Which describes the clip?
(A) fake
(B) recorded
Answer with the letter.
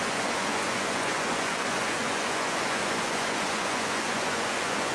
A